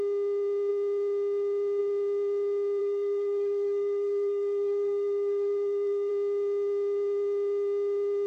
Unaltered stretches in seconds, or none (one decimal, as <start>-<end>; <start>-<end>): 0.0-2.8; 6.1-8.3